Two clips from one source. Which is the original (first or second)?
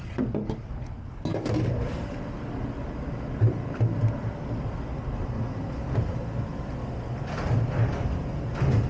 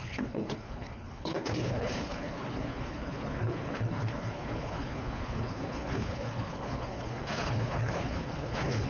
first